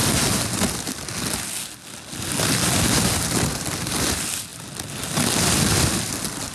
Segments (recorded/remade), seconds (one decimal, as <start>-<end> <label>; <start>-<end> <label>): 0.0-6.5 recorded